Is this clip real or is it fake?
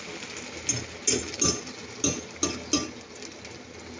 real